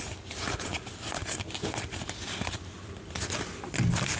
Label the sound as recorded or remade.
recorded